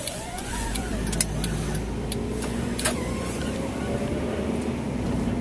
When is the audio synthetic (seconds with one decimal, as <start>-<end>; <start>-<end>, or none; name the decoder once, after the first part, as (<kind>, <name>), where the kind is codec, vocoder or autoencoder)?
0.0-0.9 (vocoder, Vocos); 2.3-3.4